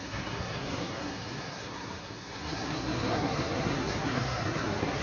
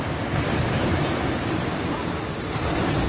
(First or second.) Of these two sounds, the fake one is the first